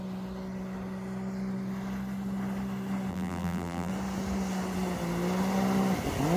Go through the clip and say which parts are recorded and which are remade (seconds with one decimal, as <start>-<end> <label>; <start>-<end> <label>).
0.0-3.1 recorded; 3.1-3.9 remade; 3.9-6.4 recorded